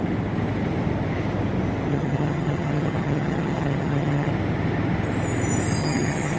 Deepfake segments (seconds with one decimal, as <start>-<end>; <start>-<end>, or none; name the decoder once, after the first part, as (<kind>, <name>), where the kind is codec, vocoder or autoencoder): 1.9-4.3 (vocoder, HiFi-GAN); 5.8-6.4